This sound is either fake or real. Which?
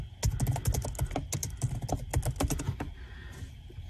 real